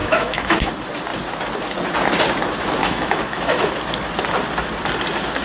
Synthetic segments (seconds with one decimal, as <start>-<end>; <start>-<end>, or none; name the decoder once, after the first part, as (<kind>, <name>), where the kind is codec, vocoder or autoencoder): 0.0-0.7 (autoencoder, DAC-VAE); 2.8-3.7